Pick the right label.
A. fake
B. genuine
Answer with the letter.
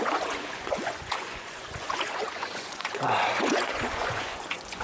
A